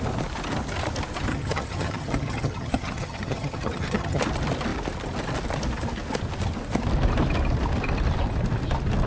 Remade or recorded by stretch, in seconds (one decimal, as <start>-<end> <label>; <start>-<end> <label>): 0.0-1.3 recorded; 1.3-4.2 remade; 4.2-9.1 recorded